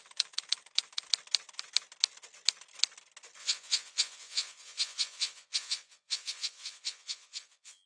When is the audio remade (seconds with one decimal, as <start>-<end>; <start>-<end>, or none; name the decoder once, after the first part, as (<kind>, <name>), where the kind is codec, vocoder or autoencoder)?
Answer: 3.4-7.9 (vocoder, Vocos)